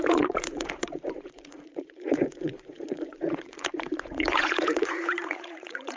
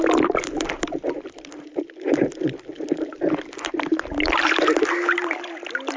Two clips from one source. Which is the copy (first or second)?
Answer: first